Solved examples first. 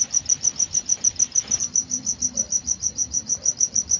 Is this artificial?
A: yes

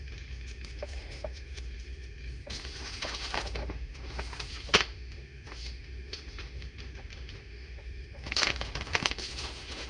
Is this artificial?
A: yes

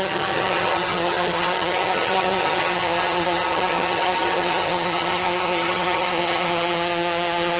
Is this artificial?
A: yes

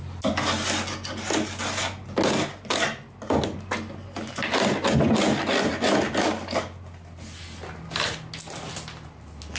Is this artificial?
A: no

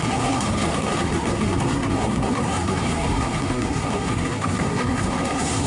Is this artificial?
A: yes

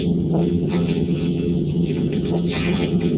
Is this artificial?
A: yes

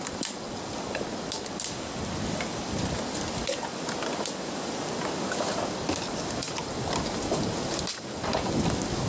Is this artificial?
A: no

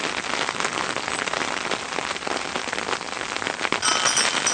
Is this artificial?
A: no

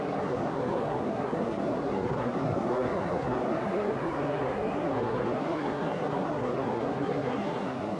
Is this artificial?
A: yes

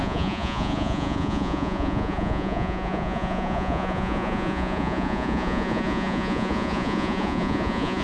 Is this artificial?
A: yes